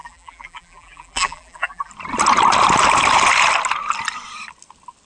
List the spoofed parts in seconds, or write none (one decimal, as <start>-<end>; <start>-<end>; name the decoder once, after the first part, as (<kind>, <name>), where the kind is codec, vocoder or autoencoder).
0.0-1.9 (vocoder, BigVGAN v2)